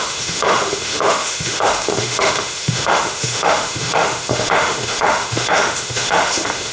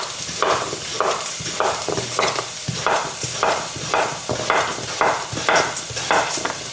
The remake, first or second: first